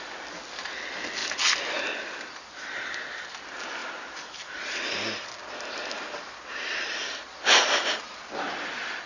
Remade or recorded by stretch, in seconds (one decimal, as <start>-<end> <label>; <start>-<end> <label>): 0.0-9.1 recorded

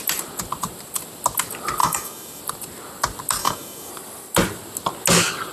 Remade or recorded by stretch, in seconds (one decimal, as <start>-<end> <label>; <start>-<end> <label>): 0.0-1.8 recorded; 1.8-2.4 remade; 2.4-3.4 recorded; 3.4-3.9 remade; 3.9-5.5 recorded

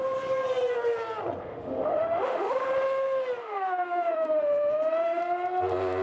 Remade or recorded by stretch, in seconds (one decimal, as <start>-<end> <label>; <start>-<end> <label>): 0.0-1.5 recorded; 1.5-2.7 remade; 2.7-3.4 recorded; 3.4-5.2 remade; 5.2-6.0 recorded

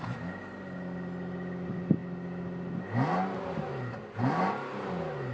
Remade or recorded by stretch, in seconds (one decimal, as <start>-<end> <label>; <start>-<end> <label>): 0.0-5.3 recorded

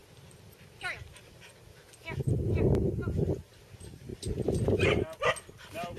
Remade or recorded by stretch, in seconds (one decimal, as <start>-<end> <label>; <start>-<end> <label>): 0.0-6.0 recorded

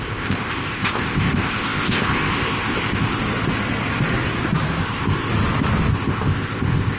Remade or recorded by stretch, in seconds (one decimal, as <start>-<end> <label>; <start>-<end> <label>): 0.0-3.2 remade; 3.2-4.8 recorded; 4.8-5.3 remade; 5.3-5.9 recorded; 5.9-7.0 remade